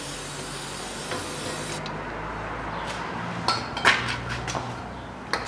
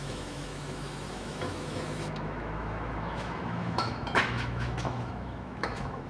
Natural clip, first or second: first